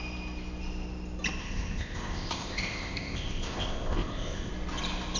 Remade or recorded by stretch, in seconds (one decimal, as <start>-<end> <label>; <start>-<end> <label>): 0.0-1.4 recorded; 1.4-4.5 remade; 4.5-5.2 recorded